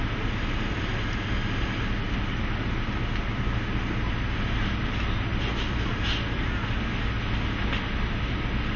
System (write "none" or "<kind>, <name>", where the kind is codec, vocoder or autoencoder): none